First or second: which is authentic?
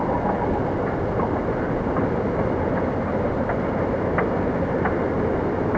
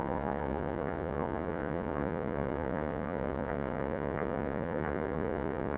first